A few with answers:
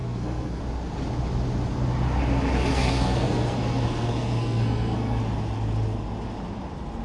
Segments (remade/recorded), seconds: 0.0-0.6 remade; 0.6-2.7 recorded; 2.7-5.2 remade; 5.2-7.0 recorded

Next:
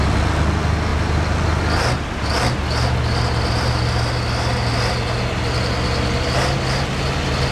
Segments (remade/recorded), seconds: 0.0-7.5 recorded

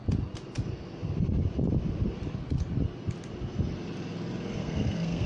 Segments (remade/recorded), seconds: 0.0-4.6 recorded; 4.6-5.3 remade

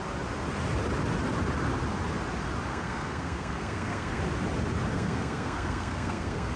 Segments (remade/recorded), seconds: 0.0-2.7 recorded; 2.7-4.2 remade; 4.2-4.9 recorded; 4.9-6.6 remade